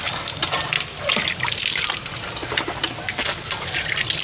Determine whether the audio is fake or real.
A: real